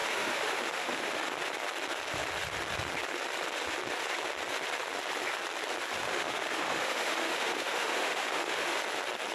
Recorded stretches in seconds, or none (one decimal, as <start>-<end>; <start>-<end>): 1.3-6.0; 8.8-9.3